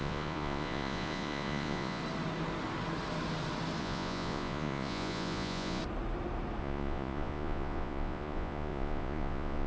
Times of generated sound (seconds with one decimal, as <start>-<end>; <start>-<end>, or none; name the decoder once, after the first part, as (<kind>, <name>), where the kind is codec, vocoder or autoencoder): 0.0-2.0 (vocoder, Vocos); 3.8-5.8; 6.6-9.7

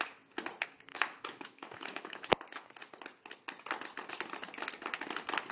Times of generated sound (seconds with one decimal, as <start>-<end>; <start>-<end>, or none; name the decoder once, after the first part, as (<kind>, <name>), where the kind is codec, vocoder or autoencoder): 0.9-2.3 (autoencoder, DAC-VAE)

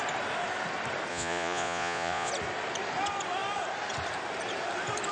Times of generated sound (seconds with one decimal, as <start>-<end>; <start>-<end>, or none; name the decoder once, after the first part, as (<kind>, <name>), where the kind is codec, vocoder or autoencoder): 1.1-2.3 (vocoder, Vocos)

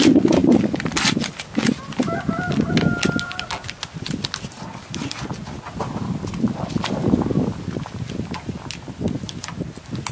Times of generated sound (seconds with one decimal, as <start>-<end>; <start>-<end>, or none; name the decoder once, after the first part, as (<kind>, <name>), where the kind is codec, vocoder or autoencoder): none

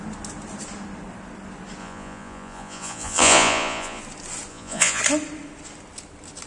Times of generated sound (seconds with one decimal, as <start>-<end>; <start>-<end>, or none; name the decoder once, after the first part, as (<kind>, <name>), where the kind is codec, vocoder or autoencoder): 1.8-4.0 (vocoder, Vocos); 4.5-5.0

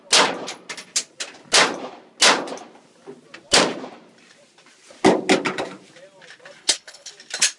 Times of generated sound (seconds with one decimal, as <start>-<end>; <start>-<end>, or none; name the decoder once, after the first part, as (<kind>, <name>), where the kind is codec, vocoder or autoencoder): 6.6-7.1 (codec, HILCodec)

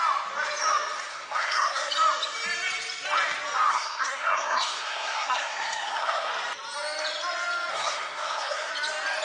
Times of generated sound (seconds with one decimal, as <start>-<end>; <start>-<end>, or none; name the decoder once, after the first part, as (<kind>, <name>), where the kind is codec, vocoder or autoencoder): 1.1-1.9 (codec, SNAC); 3.7-6.3; 7.7-8.7

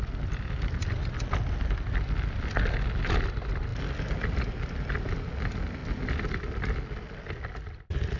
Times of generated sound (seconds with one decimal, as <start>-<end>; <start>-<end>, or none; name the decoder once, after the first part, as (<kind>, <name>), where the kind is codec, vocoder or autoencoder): none